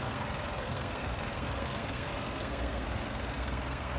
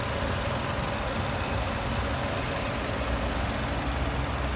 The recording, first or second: second